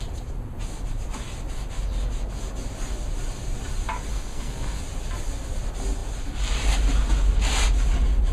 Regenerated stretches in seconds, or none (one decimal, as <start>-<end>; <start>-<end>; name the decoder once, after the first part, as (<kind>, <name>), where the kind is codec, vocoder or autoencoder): 4.1-4.8 (codec, SNAC)

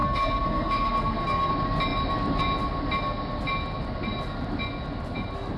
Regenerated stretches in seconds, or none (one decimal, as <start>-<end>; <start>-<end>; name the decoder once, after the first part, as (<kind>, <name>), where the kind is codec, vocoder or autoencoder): 0.0-1.5 (codec, SNAC)

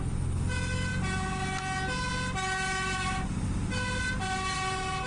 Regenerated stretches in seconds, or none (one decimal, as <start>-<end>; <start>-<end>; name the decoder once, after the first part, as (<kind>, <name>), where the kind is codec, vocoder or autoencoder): none

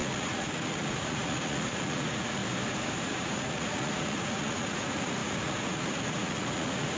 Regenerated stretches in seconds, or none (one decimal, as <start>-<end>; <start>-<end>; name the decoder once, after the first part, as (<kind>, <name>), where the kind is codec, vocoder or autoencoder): 0.0-2.4 (vocoder, Vocos); 3.0-7.0

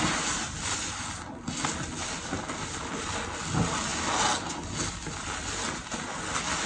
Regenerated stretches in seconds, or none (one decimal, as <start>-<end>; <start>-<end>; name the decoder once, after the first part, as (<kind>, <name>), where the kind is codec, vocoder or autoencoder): none

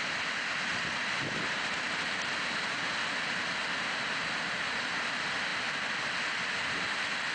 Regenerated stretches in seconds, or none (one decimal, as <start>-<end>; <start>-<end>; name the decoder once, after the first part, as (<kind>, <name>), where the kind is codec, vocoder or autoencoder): none

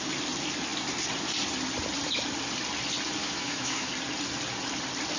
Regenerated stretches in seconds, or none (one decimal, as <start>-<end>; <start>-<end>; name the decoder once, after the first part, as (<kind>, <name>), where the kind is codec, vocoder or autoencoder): 3.2-3.9 (autoencoder, DAC-VAE)

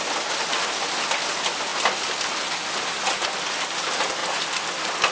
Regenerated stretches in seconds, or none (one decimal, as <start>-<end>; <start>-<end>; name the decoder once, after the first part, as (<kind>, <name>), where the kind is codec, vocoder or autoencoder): none